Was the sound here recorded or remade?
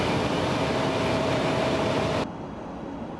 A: recorded